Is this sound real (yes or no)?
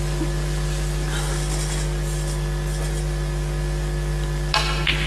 yes